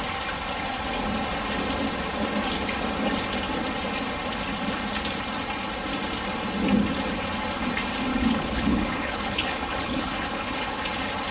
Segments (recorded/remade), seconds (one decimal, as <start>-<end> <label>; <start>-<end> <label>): 0.0-8.1 recorded; 8.1-10.8 remade; 10.8-11.3 recorded